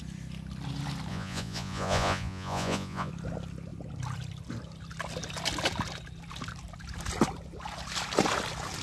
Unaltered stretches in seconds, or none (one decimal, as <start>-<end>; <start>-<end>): 0.0-1.1; 3.1-8.8